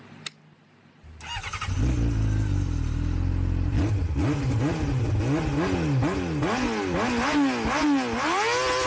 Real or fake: real